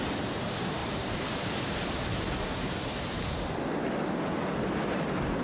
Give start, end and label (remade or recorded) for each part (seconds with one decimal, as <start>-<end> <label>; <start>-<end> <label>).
0.0-0.8 recorded; 0.8-3.2 remade; 3.2-5.4 recorded